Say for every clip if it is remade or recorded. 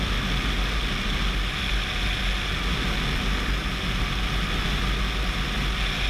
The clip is recorded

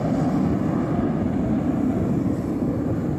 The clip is recorded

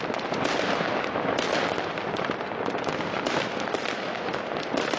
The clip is recorded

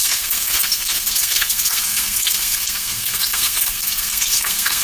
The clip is remade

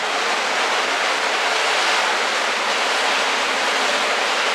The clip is recorded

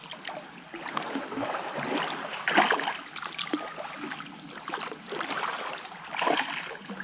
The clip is recorded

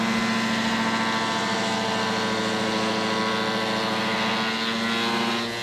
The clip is recorded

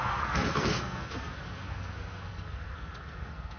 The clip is remade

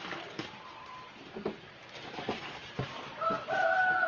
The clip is remade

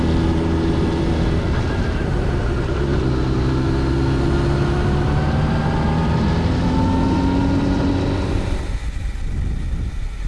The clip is recorded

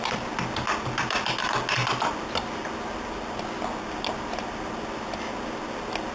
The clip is recorded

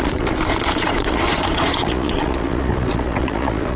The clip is remade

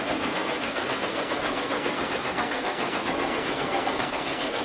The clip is remade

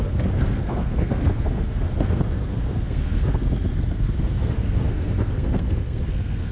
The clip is remade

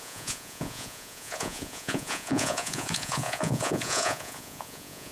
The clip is remade